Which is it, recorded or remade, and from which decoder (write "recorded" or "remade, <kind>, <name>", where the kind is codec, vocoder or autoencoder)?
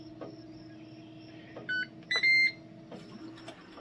recorded